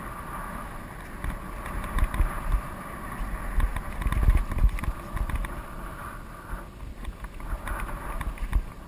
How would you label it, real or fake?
real